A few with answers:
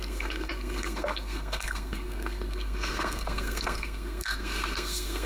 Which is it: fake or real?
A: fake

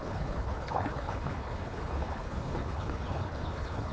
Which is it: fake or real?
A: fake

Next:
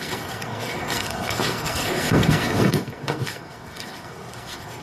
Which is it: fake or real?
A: fake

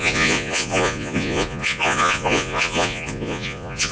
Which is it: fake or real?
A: fake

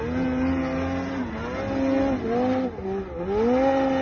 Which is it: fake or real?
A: real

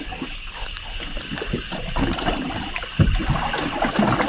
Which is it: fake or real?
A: real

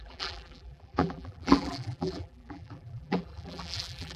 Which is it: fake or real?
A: fake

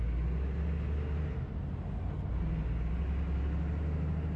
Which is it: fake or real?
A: real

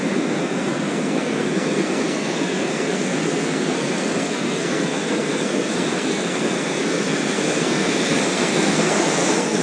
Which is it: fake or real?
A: fake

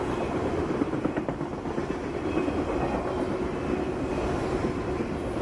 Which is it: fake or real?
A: real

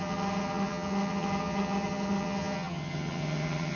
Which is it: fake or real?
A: fake